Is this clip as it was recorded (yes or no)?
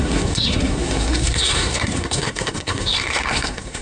no